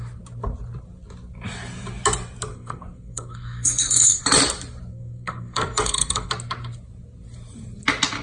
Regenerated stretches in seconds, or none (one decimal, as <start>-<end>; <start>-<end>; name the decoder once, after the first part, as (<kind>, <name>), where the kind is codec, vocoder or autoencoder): 2.5-4.2 (codec, SNAC); 4.9-6.3

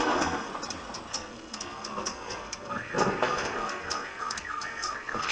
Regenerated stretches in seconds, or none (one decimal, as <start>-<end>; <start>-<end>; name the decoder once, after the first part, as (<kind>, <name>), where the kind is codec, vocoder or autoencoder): 0.0-0.5 (codec, SNAC); 1.1-5.3

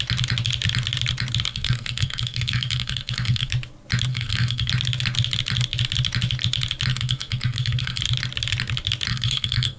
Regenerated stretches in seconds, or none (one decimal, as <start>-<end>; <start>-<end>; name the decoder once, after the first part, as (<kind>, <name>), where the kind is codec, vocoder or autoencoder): 1.5-3.5 (codec, SNAC); 4.1-4.7; 6.9-8.0; 9.1-9.8

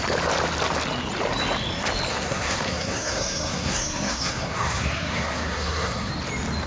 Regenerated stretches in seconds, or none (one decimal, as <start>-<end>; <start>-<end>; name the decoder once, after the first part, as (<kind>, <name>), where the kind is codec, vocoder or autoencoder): 2.1-6.1 (codec, SNAC)

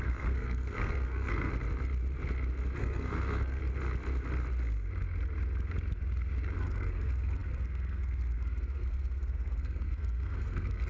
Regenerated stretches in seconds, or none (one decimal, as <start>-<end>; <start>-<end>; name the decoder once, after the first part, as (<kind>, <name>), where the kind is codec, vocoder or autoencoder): 0.0-1.5 (codec, SNAC); 2.8-3.6; 6.6-10.9